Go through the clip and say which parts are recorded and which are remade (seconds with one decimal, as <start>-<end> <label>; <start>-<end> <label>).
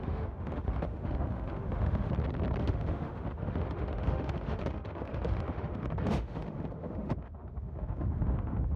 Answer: 0.0-2.1 remade; 2.1-2.6 recorded; 2.6-8.8 remade